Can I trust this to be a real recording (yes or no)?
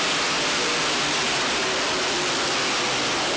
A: yes